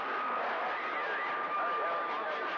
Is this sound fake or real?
real